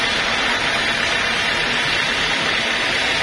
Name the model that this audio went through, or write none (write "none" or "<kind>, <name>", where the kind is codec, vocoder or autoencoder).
none